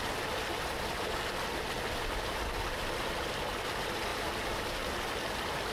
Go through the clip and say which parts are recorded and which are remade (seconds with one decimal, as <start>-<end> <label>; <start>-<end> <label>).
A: 0.0-5.7 recorded